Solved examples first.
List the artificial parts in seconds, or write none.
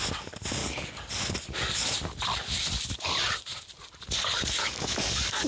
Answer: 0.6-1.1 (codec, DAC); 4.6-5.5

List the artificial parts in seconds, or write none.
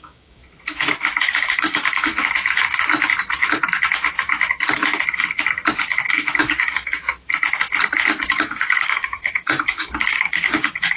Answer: 0.0-0.4 (codec, DAC); 1.2-2.1; 6.4-7.0; 8.3-11.0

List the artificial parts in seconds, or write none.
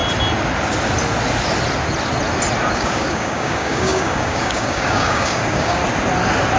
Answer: 2.7-5.8 (codec, DAC)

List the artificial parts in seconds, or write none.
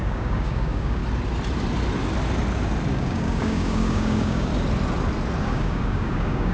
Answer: 0.0-1.0 (codec, DAC); 2.9-4.5; 5.4-6.5